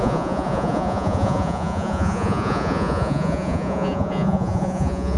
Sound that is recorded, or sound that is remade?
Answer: remade